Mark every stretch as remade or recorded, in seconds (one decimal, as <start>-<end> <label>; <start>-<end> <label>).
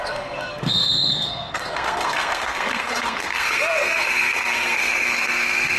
0.0-5.8 remade